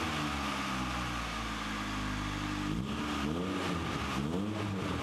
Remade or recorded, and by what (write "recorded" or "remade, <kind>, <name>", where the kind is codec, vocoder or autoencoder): recorded